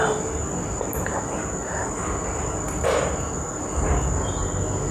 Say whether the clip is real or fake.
real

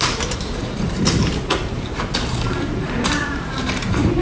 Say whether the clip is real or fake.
fake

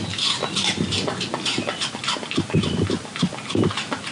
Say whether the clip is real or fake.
real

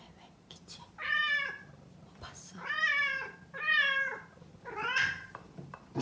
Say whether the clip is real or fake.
fake